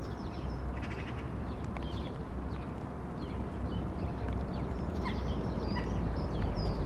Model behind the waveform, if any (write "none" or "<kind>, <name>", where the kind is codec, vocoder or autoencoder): vocoder, BigVGAN v2